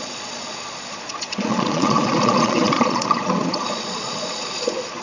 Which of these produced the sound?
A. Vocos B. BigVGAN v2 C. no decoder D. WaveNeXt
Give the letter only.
A